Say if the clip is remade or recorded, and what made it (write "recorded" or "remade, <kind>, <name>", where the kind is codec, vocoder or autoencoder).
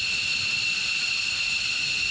recorded